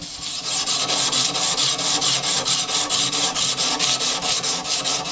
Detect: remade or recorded recorded